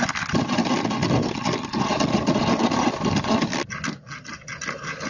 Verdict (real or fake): real